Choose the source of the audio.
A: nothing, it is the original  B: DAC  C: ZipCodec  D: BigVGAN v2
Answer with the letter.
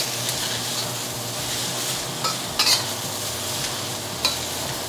A